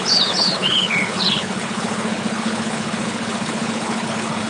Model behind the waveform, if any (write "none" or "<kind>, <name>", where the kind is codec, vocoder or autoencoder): codec, HILCodec